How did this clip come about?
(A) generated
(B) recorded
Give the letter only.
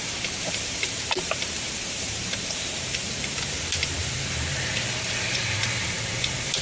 A